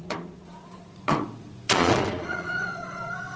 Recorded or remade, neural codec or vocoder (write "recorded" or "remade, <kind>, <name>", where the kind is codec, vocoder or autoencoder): remade, vocoder, Vocos